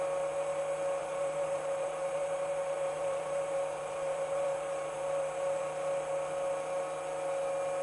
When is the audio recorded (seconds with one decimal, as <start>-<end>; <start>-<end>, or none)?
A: 0.0-1.0; 5.6-7.8